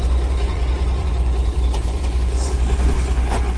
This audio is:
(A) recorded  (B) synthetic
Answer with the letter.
B